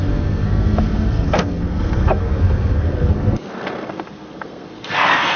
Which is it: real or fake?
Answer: fake